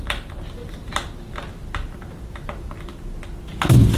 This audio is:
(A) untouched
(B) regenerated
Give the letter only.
A